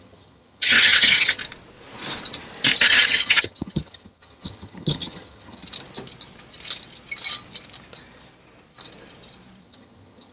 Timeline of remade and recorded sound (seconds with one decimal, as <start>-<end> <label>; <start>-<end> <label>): 0.0-1.4 remade; 1.4-2.8 recorded; 2.8-5.6 remade; 5.6-9.6 recorded; 9.6-10.3 remade